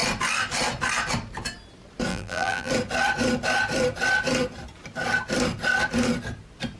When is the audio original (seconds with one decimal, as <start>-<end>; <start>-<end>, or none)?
0.0-2.1; 2.7-6.8